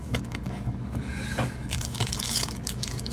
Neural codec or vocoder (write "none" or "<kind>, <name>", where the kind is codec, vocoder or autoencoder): codec, DAC